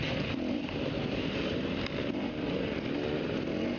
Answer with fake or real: real